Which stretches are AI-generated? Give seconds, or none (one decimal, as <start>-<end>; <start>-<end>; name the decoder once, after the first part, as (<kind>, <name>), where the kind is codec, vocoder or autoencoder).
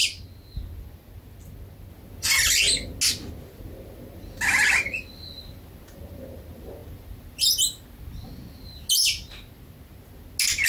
none